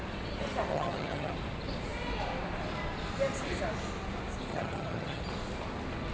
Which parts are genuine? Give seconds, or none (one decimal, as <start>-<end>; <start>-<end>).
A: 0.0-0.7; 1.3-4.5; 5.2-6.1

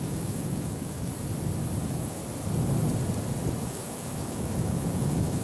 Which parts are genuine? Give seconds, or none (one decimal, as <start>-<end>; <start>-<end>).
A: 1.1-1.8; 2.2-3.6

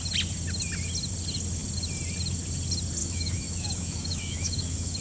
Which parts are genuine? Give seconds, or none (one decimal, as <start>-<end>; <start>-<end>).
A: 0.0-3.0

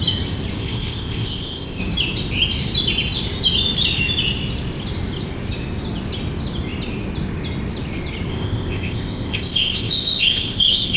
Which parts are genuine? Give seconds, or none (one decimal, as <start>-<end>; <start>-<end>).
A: 0.0-0.6; 1.8-8.3

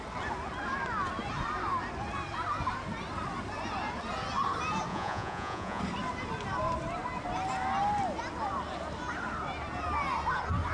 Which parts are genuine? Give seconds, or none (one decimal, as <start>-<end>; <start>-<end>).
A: 0.0-4.9; 5.8-10.7

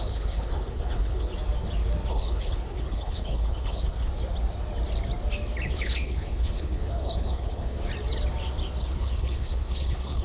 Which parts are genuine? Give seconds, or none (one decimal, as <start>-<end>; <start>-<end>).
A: 1.3-2.1; 4.1-5.7; 7.8-8.8

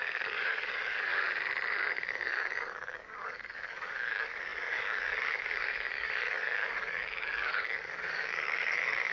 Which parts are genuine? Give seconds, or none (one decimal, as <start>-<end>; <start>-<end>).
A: 1.1-1.9